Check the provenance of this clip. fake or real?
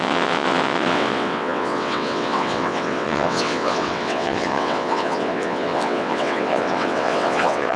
fake